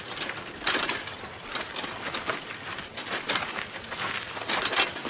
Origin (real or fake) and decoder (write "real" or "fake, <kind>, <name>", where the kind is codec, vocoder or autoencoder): real